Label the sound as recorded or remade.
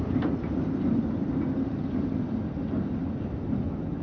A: recorded